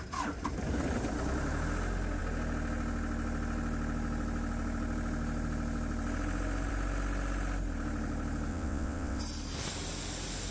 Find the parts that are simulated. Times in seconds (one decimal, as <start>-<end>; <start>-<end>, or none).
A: 8.5-9.2